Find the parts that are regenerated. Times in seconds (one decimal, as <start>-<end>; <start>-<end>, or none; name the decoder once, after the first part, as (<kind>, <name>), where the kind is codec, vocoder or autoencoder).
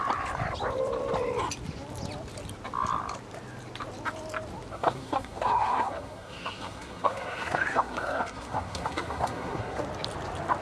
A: 4.7-9.8 (codec, SNAC)